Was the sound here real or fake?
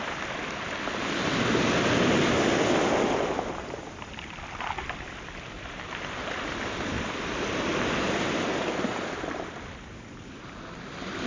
real